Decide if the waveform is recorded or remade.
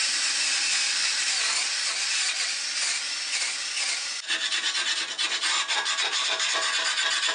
recorded